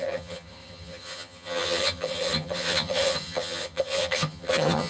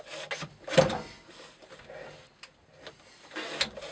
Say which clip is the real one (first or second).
second